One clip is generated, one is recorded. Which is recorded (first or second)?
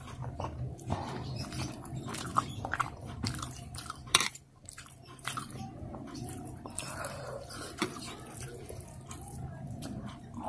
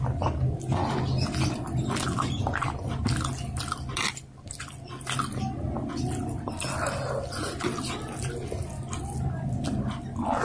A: second